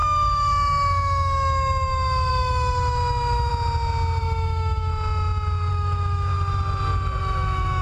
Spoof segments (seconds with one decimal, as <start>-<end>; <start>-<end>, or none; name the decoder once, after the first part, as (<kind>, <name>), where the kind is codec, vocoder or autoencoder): 0.0-3.5 (autoencoder, DAC-VAE); 4.2-4.9; 5.7-6.3; 7.2-7.8